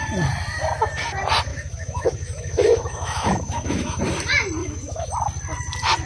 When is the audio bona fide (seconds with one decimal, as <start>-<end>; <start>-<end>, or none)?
0.0-1.5; 4.0-4.6; 5.1-6.1